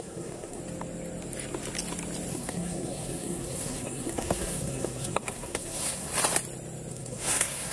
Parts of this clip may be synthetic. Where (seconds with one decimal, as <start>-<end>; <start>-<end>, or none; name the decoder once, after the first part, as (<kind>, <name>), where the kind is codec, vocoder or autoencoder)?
0.0-0.6 (codec, SNAC); 2.3-6.1; 6.9-7.7